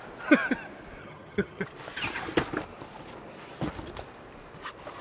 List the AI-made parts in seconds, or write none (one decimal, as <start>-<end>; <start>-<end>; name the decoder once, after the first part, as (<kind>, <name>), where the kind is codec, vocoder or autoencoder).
1.0-1.6 (vocoder, HiFi-GAN)